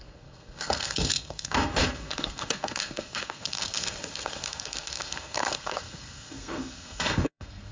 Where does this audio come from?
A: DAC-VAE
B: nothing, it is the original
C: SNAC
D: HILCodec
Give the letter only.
C